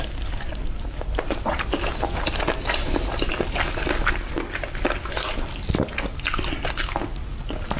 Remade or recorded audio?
remade